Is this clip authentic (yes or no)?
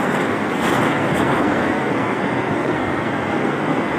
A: no